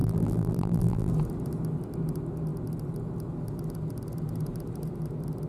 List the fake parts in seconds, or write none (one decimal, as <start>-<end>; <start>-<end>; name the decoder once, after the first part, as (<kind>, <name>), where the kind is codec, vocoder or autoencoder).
0.0-1.1 (vocoder, BigVGAN v2)